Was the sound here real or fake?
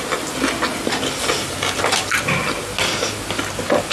real